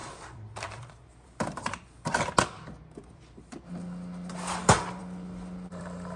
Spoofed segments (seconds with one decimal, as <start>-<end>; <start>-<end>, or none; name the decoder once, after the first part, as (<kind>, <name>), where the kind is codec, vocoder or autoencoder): 0.0-3.7 (vocoder, BigVGAN v2)